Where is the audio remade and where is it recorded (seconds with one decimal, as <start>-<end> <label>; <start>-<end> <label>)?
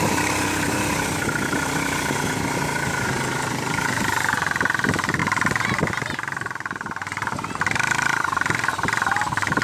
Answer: 0.0-9.6 recorded